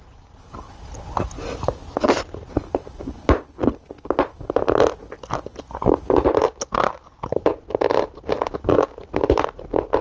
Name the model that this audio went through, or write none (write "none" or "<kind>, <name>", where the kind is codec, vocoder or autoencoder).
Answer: none